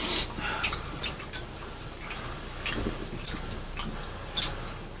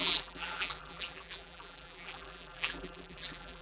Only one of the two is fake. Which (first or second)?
second